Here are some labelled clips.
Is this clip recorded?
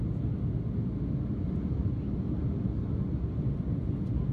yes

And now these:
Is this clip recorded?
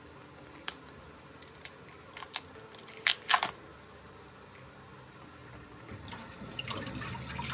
yes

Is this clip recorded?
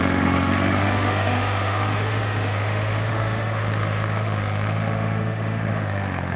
no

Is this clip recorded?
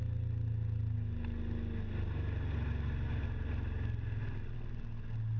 yes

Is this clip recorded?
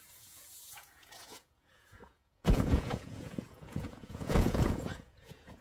no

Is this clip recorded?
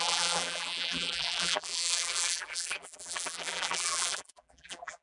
no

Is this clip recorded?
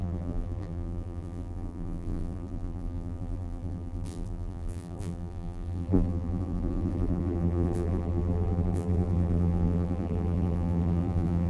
no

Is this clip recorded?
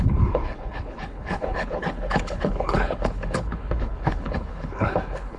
no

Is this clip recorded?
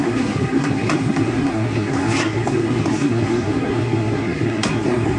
no